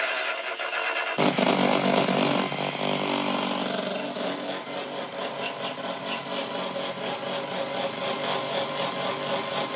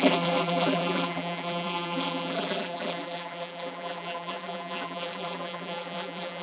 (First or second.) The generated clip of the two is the second